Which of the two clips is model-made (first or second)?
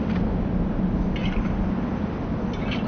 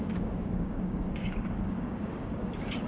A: second